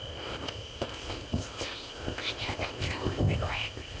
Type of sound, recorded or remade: remade